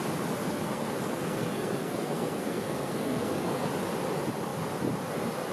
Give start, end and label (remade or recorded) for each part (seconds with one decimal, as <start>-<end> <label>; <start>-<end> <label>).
0.0-0.4 recorded; 0.4-3.7 remade; 3.7-5.5 recorded